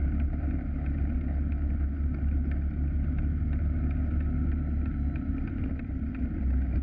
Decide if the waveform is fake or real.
real